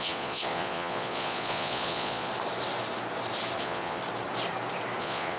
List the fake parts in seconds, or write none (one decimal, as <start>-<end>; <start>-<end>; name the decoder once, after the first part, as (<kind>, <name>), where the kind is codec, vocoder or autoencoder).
0.0-2.3 (vocoder, Vocos); 3.6-4.0; 5.0-5.4